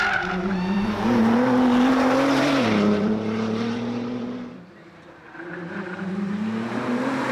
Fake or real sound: fake